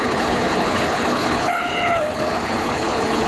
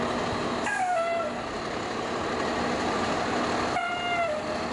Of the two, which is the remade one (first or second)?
first